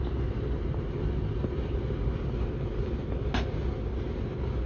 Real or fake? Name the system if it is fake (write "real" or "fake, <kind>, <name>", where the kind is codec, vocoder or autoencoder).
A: real